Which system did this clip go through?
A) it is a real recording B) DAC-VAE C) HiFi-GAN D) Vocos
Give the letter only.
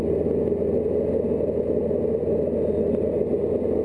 A